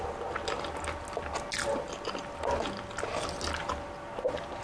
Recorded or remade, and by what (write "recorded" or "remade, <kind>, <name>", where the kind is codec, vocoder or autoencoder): recorded